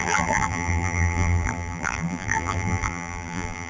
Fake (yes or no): yes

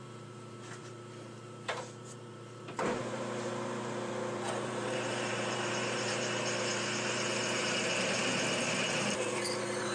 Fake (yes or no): yes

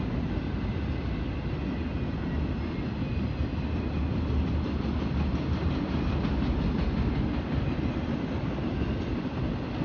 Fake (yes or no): no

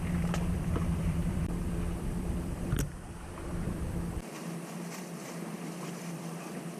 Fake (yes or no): yes